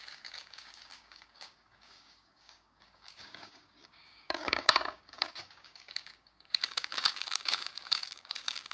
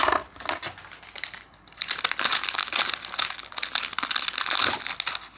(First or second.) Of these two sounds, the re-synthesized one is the first